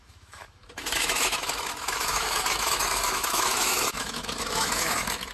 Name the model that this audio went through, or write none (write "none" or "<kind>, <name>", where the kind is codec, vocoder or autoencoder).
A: autoencoder, DAC-VAE